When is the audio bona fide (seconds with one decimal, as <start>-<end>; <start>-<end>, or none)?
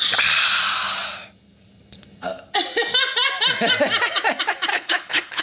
0.0-4.7